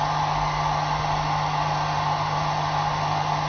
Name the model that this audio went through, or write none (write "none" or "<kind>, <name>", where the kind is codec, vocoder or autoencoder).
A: none